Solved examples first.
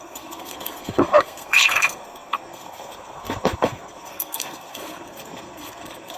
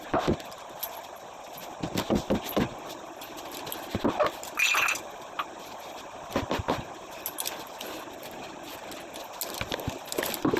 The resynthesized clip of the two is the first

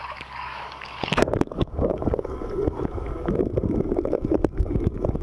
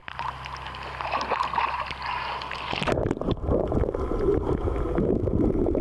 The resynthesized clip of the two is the first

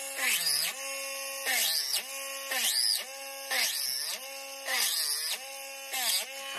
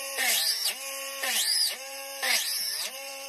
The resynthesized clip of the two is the second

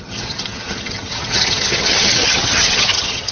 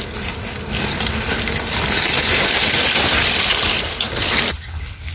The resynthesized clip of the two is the first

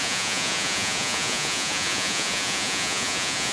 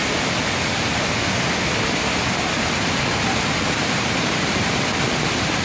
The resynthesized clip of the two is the first